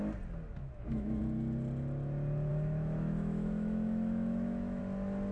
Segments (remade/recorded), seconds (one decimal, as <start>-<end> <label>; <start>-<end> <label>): 0.0-0.6 recorded; 0.6-1.2 remade; 1.2-2.5 recorded; 2.5-4.8 remade; 4.8-5.3 recorded